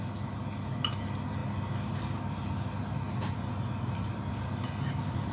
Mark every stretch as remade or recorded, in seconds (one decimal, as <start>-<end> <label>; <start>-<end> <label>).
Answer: 0.0-5.3 recorded